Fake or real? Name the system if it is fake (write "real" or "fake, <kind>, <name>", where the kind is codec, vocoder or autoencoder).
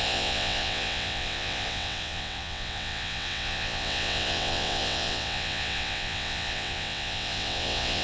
fake, vocoder, WaveNeXt